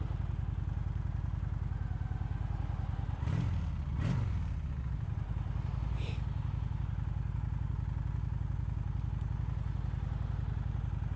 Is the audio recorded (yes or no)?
yes